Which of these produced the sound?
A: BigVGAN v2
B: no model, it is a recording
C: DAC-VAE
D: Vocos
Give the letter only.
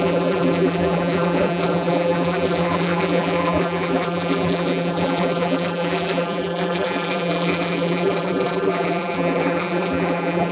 A